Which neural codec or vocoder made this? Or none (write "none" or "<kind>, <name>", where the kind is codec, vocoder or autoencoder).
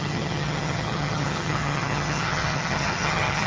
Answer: vocoder, HiFi-GAN